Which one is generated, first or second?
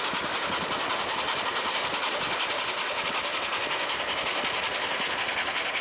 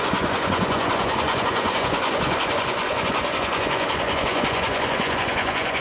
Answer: second